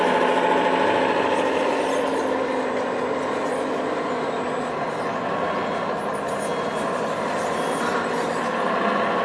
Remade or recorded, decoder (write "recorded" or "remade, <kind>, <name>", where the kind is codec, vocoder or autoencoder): recorded